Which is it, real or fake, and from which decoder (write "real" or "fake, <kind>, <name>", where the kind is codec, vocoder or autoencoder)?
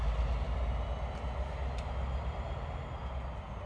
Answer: real